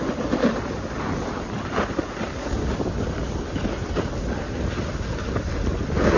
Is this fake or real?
real